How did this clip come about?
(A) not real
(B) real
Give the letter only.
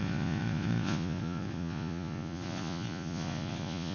A